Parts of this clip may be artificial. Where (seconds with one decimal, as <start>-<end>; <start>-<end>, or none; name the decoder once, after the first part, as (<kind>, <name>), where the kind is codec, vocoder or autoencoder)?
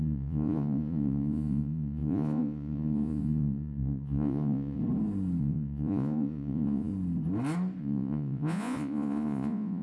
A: 0.0-4.8 (vocoder, Vocos); 5.4-6.9; 7.8-9.8